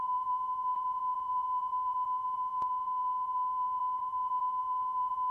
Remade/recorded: remade